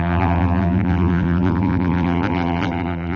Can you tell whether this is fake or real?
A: fake